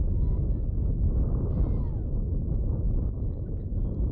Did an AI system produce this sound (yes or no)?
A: no